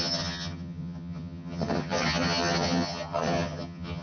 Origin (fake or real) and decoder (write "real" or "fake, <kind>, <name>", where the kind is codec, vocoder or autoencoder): fake, vocoder, HiFi-GAN